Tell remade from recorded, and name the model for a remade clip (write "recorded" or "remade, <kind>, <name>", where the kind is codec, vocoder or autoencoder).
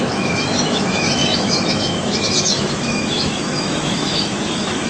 remade, autoencoder, DAC-VAE